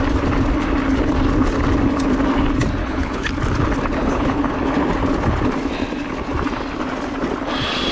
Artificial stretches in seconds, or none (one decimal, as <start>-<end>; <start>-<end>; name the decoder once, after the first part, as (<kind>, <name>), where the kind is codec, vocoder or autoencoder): 2.8-3.3 (codec, HILCodec); 4.0-4.5